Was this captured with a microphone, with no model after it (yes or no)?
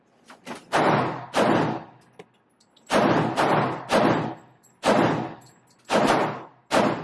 yes